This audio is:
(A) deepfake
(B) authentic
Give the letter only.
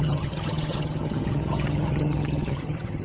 A